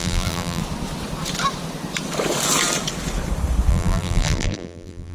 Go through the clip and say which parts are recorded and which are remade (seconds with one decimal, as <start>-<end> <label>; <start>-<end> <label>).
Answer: 0.0-0.6 remade; 0.6-3.7 recorded; 3.7-5.1 remade